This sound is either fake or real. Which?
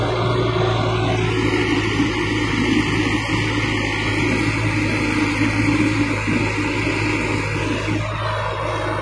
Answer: real